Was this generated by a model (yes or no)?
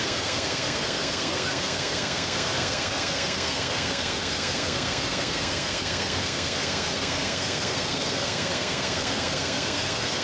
yes